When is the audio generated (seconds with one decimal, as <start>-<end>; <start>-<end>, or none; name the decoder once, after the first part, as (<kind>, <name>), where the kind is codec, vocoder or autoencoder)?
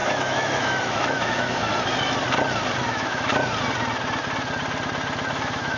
0.0-1.7 (autoencoder, DAC-VAE); 2.8-3.3; 5.3-5.8